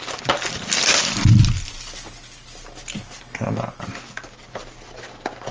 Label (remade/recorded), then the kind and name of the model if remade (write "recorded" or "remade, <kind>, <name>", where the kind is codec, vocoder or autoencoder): recorded